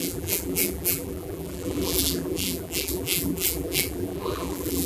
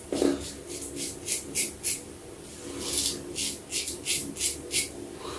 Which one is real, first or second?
second